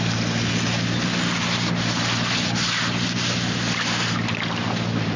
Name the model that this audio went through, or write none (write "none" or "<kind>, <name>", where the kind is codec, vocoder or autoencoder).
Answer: none